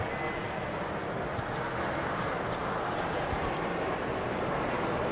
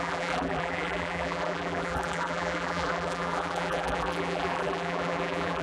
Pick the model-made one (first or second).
second